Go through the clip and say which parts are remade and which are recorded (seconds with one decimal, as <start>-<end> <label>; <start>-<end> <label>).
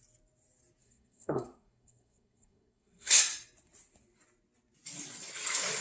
0.0-0.8 recorded; 0.8-3.2 remade; 3.2-5.8 recorded